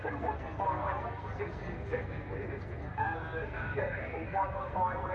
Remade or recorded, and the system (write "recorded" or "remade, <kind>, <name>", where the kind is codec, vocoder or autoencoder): remade, codec, SNAC